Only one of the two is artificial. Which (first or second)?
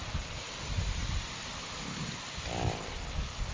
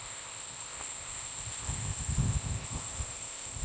second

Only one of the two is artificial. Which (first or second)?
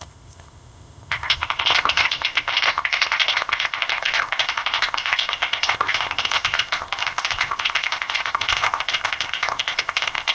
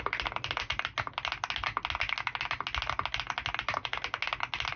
first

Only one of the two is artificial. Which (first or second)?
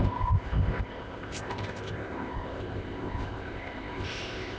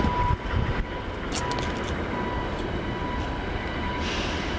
first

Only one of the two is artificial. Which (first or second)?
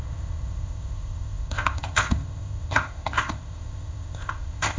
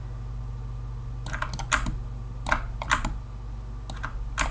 first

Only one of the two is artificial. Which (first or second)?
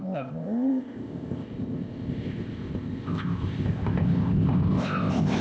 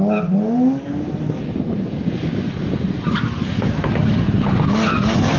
first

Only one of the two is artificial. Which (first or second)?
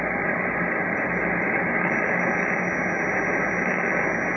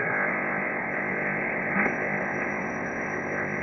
second